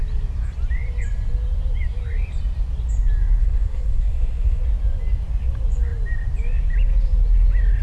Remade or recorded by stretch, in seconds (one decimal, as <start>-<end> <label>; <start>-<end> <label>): 0.0-3.4 recorded; 3.4-4.6 remade; 4.6-7.8 recorded

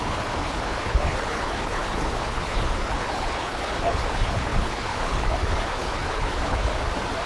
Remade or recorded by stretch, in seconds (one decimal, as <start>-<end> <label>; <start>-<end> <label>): 0.0-6.7 remade; 6.7-7.3 recorded

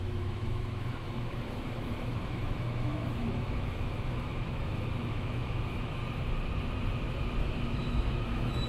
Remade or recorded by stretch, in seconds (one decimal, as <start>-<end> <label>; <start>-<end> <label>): 0.0-6.0 remade; 6.0-7.4 recorded; 7.4-8.7 remade

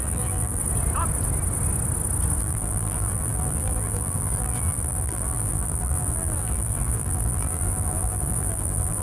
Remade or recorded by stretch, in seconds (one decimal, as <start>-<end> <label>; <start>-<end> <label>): 0.0-0.6 remade; 0.6-2.4 recorded; 2.4-9.0 remade

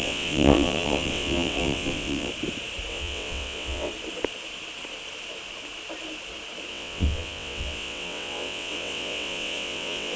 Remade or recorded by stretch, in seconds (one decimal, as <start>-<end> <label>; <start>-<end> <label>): 0.0-2.3 remade; 2.3-2.9 recorded; 2.9-3.9 remade; 3.9-6.7 recorded; 6.7-10.2 remade

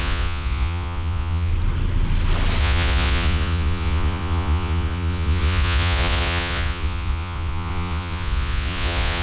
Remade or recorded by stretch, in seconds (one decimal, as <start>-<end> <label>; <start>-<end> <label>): 0.0-1.5 remade; 1.5-2.6 recorded; 2.6-9.2 remade

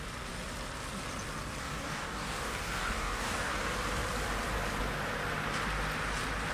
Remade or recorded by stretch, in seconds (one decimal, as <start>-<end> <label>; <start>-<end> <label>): 0.0-1.6 recorded; 1.6-3.5 remade; 3.5-6.5 recorded

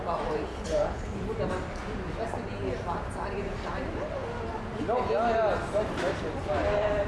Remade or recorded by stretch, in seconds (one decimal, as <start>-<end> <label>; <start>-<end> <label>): 0.0-0.5 recorded; 0.5-1.2 remade; 1.2-7.1 recorded